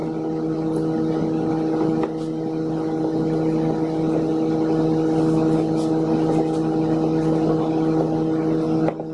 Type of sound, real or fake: real